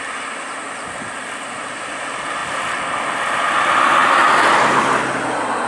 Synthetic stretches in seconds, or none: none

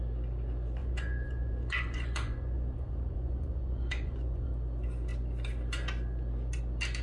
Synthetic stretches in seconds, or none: 0.8-4.5 (vocoder, Vocos)

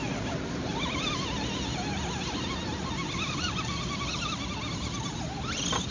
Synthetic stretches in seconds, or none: none

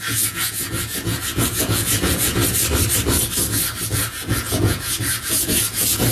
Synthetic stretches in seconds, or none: 0.0-2.4 (vocoder, Vocos); 3.8-6.1

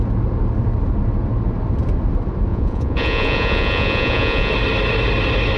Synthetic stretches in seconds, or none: 2.5-4.5 (vocoder, Vocos)

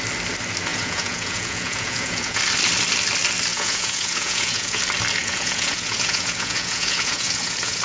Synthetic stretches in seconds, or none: 0.7-2.4 (vocoder, Vocos); 3.5-4.8; 5.2-7.8

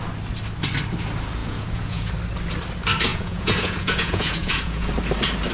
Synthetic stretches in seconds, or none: 1.4-2.1 (vocoder, Vocos); 3.1-4.9